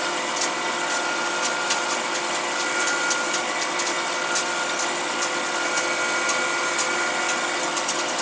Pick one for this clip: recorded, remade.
recorded